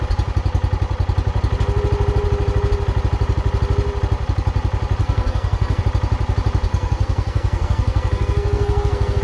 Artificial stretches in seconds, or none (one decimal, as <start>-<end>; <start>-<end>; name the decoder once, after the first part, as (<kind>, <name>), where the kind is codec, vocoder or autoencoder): 5.0-5.8 (codec, SNAC); 6.7-9.2